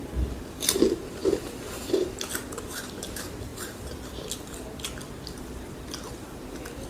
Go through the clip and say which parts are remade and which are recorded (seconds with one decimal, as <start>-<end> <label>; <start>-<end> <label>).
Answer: 0.0-1.2 recorded; 1.2-1.9 remade; 1.9-3.5 recorded; 3.5-4.6 remade; 4.6-6.9 recorded